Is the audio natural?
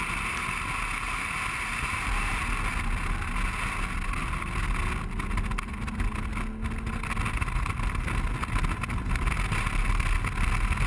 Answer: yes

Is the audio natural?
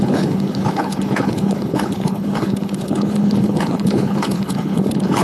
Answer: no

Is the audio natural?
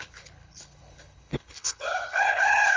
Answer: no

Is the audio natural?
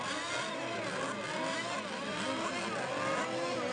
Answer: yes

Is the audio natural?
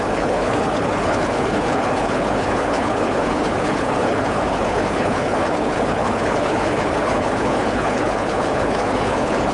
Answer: no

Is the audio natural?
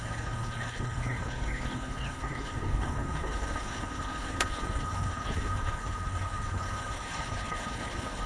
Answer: no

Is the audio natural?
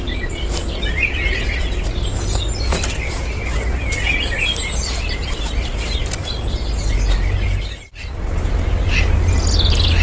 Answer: yes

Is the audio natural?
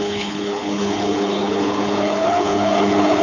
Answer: no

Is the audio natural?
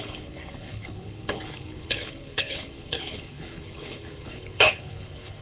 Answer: no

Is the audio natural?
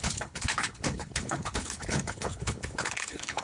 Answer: no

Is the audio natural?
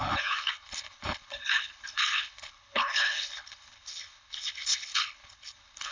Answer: no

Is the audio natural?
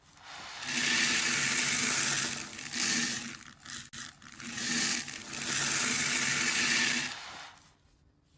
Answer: yes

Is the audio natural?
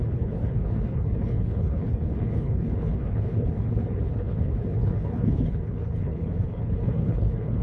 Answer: no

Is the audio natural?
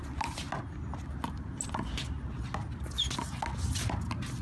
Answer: yes